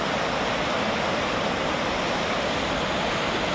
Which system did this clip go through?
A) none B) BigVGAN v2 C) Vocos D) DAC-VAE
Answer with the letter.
A